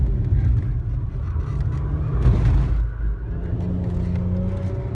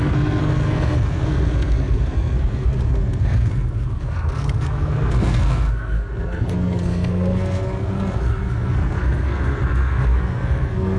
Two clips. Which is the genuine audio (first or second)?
first